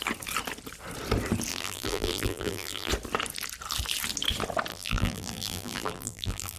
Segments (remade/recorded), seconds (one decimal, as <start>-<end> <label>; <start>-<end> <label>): 0.0-1.5 recorded; 1.5-2.9 remade; 2.9-4.7 recorded; 4.7-6.6 remade